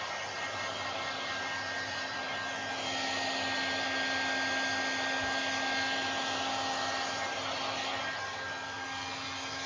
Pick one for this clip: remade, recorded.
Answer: recorded